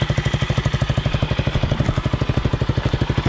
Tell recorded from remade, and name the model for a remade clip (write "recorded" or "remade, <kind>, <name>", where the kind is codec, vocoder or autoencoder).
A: recorded